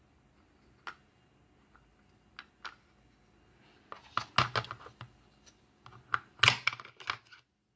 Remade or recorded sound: recorded